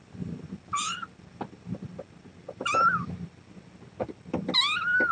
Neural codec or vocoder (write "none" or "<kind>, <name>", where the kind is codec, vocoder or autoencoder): none